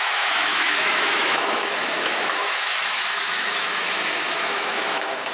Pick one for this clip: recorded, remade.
remade